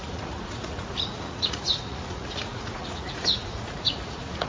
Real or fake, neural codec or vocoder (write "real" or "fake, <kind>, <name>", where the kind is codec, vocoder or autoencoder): fake, vocoder, Vocos